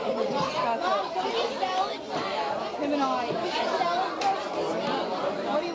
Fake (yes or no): no